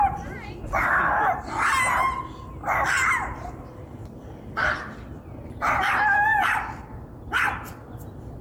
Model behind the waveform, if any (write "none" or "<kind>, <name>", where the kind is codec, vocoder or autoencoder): none